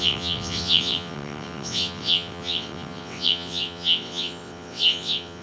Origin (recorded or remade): remade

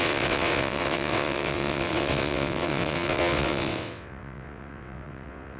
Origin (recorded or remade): remade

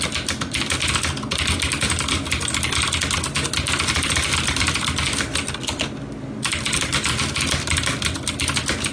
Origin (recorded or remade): recorded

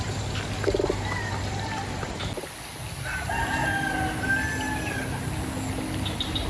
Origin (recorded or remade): recorded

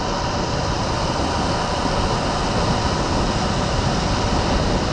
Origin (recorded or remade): recorded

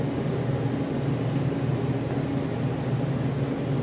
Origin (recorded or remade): recorded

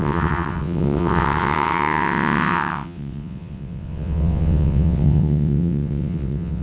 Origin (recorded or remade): remade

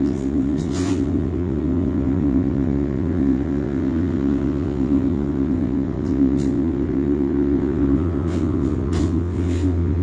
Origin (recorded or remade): remade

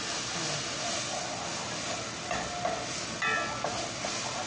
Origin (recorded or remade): recorded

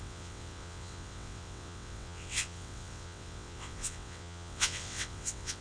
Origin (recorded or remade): remade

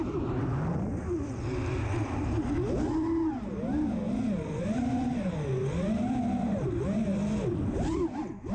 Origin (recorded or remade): recorded